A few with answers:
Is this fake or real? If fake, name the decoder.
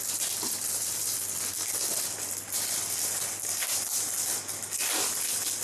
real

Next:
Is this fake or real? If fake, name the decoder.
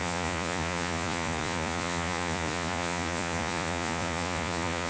fake, vocoder, Vocos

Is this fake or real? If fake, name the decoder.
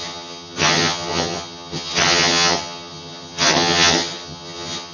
fake, vocoder, HiFi-GAN